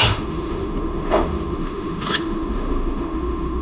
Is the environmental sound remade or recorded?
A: remade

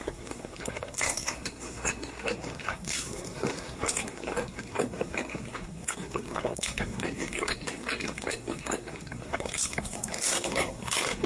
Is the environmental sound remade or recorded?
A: remade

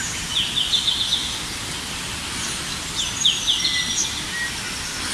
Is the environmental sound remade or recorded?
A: recorded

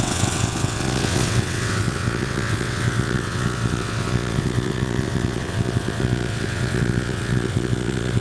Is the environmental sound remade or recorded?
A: remade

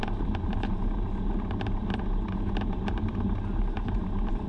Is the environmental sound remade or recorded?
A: remade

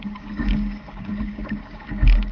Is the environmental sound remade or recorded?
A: remade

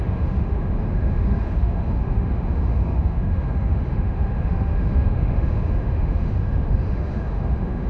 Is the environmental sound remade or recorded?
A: remade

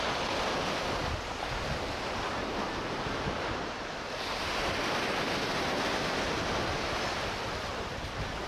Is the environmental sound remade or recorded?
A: recorded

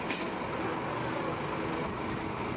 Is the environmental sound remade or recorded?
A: recorded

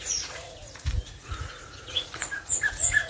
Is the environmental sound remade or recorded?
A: remade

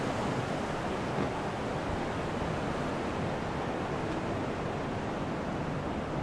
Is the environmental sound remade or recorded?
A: recorded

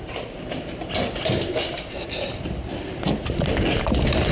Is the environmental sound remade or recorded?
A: recorded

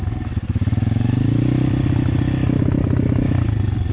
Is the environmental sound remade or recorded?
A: recorded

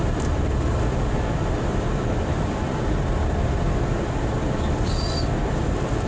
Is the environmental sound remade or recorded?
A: remade